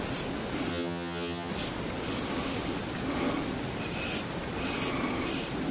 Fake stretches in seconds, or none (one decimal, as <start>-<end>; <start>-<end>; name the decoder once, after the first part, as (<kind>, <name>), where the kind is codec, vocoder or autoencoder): 0.7-1.5 (vocoder, HiFi-GAN)